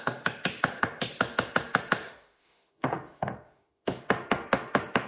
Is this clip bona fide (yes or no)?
no